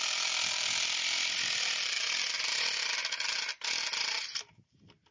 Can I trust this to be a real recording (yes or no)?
yes